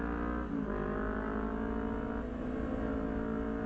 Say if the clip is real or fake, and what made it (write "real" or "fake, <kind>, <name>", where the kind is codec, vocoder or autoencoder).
real